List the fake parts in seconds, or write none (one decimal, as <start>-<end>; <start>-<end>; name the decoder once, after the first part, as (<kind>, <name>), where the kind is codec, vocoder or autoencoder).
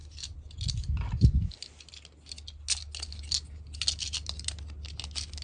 none